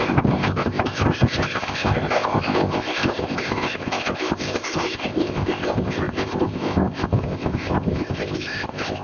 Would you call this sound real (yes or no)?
no